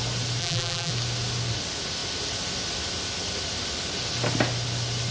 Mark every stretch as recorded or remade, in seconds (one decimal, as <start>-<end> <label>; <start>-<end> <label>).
0.0-0.4 recorded; 0.4-0.9 remade; 0.9-5.1 recorded

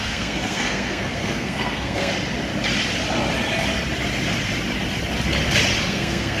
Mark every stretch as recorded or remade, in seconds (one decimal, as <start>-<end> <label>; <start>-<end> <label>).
0.0-2.1 remade; 2.1-5.9 recorded; 5.9-6.4 remade

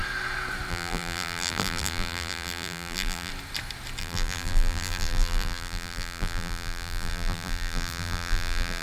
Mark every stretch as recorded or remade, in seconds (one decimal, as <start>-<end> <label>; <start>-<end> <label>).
0.0-0.7 recorded; 0.7-3.3 remade; 3.3-4.0 recorded; 4.0-8.8 remade

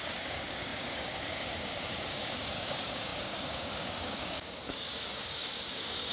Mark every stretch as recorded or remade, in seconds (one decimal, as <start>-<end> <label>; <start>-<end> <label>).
0.0-6.1 remade

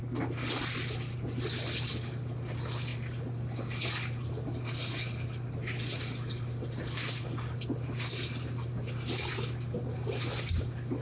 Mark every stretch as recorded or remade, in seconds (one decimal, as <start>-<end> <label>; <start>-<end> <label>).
0.0-11.0 recorded

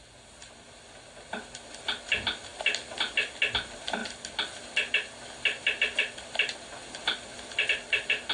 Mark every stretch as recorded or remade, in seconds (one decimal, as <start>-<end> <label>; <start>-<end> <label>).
0.0-8.3 recorded

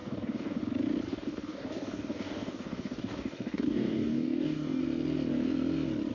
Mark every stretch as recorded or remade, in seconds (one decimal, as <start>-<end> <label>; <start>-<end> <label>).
0.0-0.6 remade; 0.6-1.1 recorded; 1.1-4.8 remade; 4.8-6.1 recorded

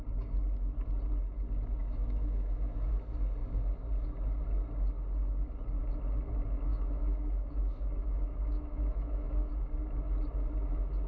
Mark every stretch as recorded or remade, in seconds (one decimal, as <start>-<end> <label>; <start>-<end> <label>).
0.0-1.8 recorded; 1.8-2.9 remade; 2.9-6.7 recorded; 6.7-9.5 remade; 9.5-11.1 recorded